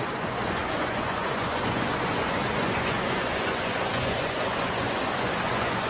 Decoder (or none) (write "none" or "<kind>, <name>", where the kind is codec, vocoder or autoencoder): vocoder, Vocos